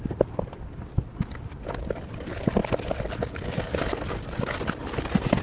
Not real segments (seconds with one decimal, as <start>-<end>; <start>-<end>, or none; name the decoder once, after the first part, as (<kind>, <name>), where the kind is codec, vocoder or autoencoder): none